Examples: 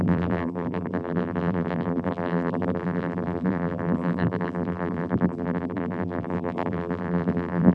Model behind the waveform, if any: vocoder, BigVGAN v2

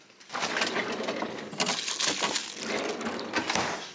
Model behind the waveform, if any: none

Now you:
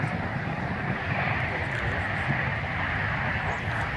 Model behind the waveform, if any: none